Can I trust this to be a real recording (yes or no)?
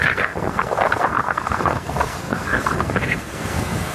no